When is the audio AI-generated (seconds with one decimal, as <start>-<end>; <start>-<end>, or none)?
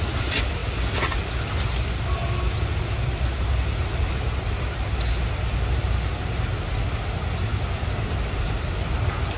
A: none